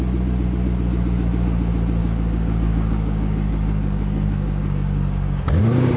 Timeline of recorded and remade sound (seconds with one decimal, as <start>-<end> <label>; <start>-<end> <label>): 0.0-2.0 recorded; 2.0-5.6 remade; 5.6-6.0 recorded